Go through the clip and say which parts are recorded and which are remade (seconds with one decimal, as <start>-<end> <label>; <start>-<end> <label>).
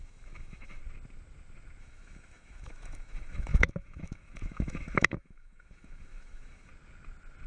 0.0-0.8 remade; 0.8-1.8 recorded; 1.8-6.7 remade; 6.7-7.5 recorded